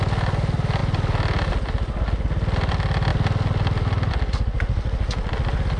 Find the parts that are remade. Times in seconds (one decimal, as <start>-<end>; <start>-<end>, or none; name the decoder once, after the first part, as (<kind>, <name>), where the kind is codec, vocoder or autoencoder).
none